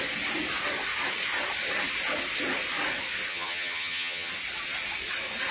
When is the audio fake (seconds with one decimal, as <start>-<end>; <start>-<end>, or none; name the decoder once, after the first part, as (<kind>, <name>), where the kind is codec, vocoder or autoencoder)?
3.3-4.3 (vocoder, HiFi-GAN)